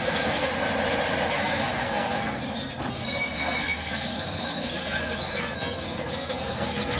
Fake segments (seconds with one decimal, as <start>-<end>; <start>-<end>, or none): 0.0-0.5; 1.3-2.4; 2.9-7.0